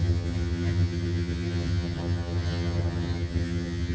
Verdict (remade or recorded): remade